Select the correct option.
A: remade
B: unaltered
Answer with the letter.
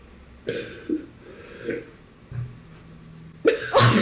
B